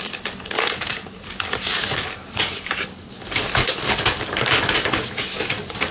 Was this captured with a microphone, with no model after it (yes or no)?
no